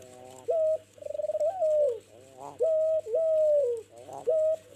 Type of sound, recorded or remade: recorded